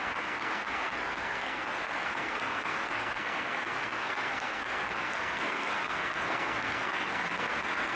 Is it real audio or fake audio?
fake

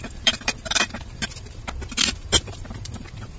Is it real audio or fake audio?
fake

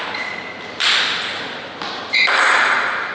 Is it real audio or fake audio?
real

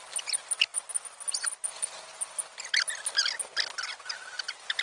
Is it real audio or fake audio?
real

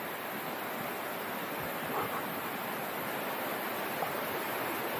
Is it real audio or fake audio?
real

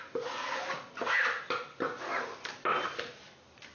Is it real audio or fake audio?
real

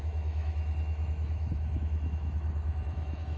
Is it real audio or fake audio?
fake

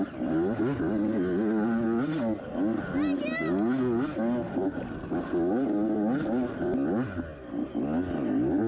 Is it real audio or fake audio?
real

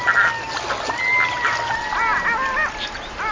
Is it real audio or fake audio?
real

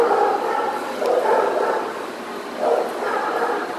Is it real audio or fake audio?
real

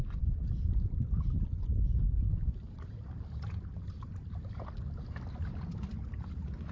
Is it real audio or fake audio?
real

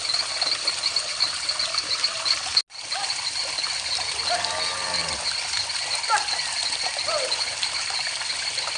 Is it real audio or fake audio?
real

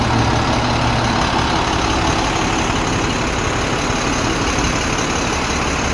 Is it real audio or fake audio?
real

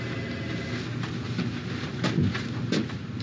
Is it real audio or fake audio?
real